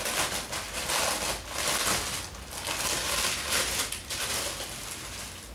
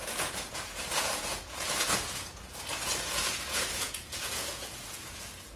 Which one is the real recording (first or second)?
first